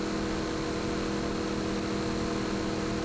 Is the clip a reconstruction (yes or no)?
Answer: no